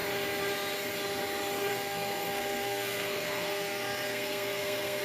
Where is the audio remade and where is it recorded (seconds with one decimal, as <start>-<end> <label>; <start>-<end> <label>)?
0.0-1.7 recorded; 1.7-5.0 remade